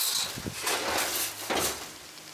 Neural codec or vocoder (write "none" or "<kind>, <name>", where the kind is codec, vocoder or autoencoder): none